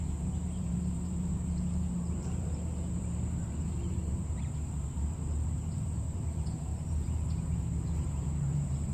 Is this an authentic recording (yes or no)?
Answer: no